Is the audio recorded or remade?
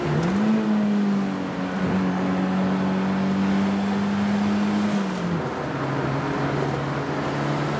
recorded